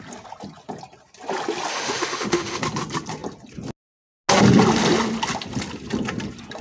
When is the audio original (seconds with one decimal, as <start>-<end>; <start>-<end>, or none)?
0.0-1.7; 2.6-6.6